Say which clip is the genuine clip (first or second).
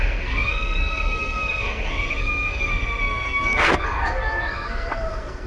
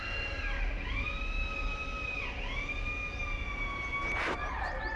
second